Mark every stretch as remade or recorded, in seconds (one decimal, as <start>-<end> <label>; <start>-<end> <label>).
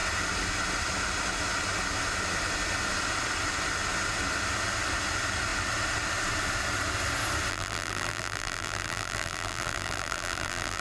0.0-7.5 recorded; 7.5-10.8 remade